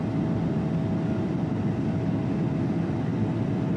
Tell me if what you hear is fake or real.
real